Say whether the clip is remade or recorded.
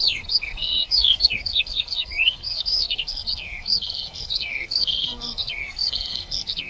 remade